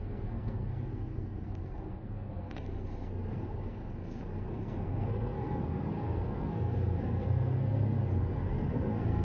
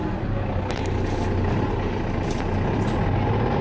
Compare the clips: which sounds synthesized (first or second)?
first